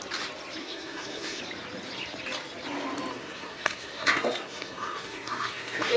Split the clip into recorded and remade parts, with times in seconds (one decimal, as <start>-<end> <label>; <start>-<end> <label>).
0.0-0.6 recorded; 0.6-1.4 remade; 1.4-3.1 recorded; 3.1-6.0 remade